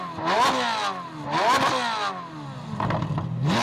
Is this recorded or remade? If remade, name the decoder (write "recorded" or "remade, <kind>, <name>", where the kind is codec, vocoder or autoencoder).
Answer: recorded